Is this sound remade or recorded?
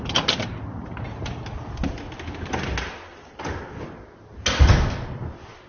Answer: recorded